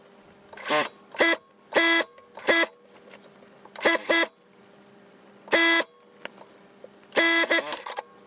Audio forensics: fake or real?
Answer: real